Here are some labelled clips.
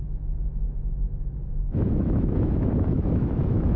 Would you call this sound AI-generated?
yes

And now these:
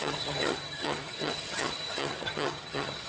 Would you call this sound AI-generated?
yes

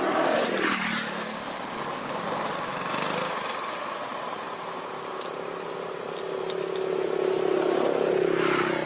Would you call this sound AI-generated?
no